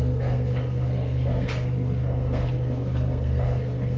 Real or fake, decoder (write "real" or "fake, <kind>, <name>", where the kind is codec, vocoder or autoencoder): fake, codec, SNAC